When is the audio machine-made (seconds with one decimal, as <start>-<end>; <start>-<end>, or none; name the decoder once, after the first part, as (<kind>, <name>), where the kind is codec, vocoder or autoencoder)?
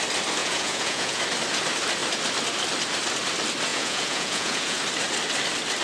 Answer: 0.4-1.2 (vocoder, Vocos); 3.7-4.8